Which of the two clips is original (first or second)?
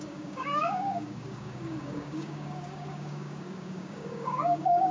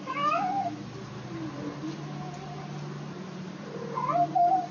second